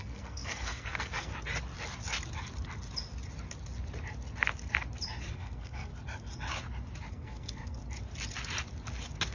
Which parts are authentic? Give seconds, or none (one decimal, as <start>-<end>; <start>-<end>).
1.3-5.3; 5.9-7.1; 7.8-9.3